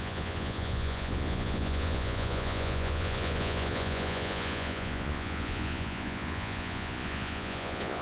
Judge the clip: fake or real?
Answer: fake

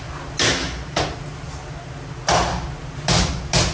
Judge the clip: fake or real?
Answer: real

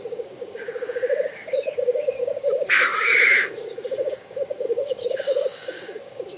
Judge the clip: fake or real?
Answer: fake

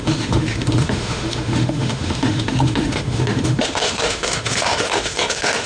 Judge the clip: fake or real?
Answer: fake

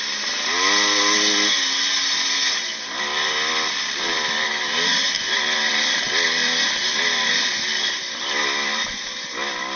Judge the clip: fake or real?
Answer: real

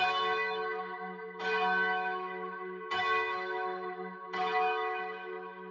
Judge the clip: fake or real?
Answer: fake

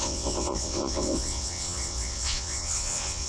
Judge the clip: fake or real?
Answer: fake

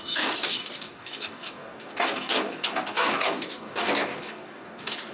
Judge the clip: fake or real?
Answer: fake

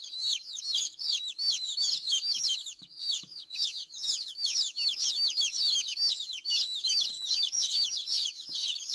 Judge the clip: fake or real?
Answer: fake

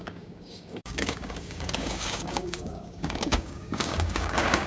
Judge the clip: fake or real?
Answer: fake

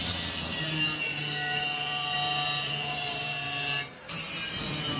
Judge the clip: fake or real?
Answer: fake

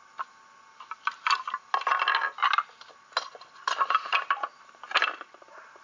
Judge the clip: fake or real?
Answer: real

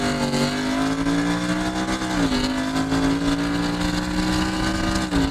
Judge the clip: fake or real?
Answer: real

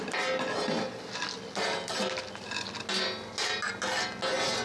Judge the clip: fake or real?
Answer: real